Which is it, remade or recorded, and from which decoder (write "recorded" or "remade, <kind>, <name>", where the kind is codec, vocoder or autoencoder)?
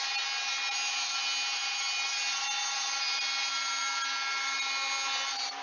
recorded